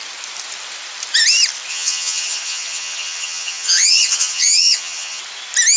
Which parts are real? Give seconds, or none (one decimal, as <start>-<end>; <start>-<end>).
0.0-1.7; 5.2-5.8